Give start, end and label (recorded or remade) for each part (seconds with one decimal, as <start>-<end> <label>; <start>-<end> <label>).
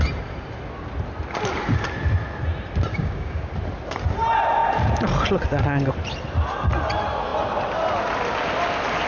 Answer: 0.0-2.9 recorded; 2.9-3.5 remade; 3.5-9.1 recorded